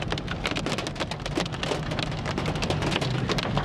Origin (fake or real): real